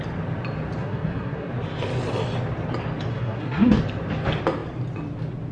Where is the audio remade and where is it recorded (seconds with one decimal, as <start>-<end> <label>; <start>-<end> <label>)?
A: 0.0-0.8 recorded; 0.8-1.5 remade; 1.5-3.1 recorded; 3.1-3.8 remade; 3.8-5.5 recorded